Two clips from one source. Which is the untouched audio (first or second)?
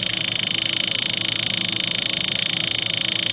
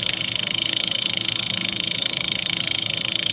first